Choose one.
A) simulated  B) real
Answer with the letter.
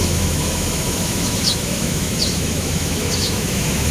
A